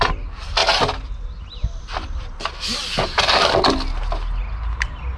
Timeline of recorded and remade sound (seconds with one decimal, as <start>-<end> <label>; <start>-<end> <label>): 0.0-5.2 recorded

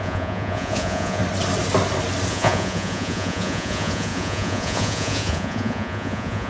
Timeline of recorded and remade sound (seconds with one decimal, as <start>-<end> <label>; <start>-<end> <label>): 0.0-1.2 remade; 1.2-2.3 recorded; 2.3-6.5 remade

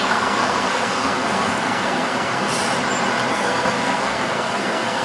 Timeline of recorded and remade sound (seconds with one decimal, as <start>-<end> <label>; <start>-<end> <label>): 0.0-2.5 remade; 2.5-3.3 recorded; 3.3-5.0 remade

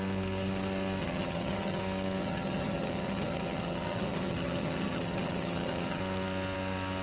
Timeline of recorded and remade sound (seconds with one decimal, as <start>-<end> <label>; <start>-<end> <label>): 0.0-1.0 recorded; 1.0-1.8 remade; 1.8-2.2 recorded; 2.2-6.0 remade; 6.0-7.0 recorded

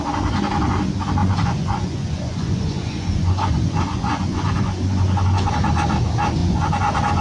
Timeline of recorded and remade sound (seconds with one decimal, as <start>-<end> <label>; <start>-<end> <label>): 0.0-1.2 recorded; 1.2-5.5 remade; 5.5-6.4 recorded; 6.4-7.2 remade

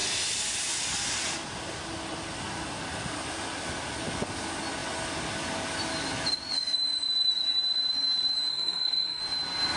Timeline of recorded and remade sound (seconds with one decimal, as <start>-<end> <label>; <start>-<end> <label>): 0.0-8.5 recorded; 8.5-9.2 remade; 9.2-9.8 recorded

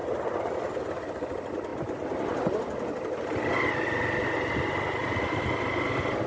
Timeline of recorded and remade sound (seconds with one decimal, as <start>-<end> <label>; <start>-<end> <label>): 0.0-6.3 recorded